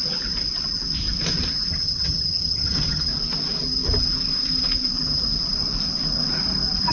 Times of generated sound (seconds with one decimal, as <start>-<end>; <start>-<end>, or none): 1.7-3.1

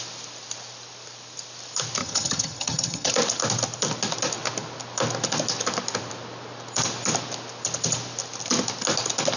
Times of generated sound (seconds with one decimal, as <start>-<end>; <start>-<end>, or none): 2.0-3.1